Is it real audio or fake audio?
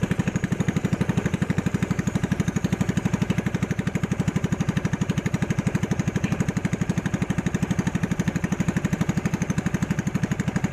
fake